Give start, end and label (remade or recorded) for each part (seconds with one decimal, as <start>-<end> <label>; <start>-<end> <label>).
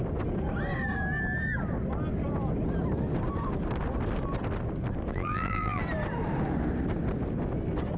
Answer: 0.0-5.1 recorded; 5.1-5.8 remade; 5.8-8.0 recorded